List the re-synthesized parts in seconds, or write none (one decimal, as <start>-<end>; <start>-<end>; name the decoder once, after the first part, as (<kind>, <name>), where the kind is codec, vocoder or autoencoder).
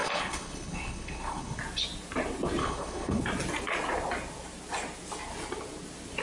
0.0-1.6 (codec, HILCodec); 2.6-3.2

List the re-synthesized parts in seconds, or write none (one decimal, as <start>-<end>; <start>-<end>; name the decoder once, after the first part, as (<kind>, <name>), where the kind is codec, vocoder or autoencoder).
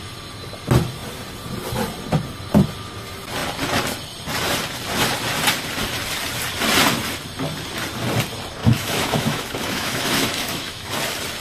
8.6-10.9 (autoencoder, DAC-VAE)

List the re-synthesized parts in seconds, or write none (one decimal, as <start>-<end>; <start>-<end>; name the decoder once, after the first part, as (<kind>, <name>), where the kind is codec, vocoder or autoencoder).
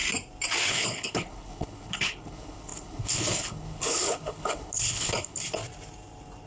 0.7-5.6 (codec, HILCodec)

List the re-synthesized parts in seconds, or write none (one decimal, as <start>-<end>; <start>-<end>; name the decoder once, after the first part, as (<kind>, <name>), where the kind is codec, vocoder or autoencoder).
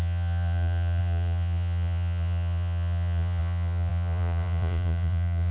0.0-5.5 (vocoder, Vocos)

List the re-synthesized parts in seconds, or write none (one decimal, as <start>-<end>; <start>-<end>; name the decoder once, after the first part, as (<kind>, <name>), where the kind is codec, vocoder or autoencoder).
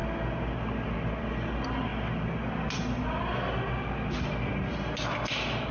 none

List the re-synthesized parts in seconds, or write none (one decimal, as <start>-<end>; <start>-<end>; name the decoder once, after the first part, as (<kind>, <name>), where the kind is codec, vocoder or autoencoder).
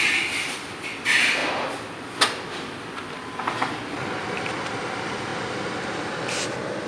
0.0-1.4 (vocoder, BigVGAN v2); 4.1-5.3